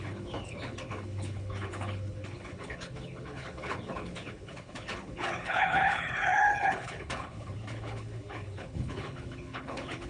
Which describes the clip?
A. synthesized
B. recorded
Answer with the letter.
A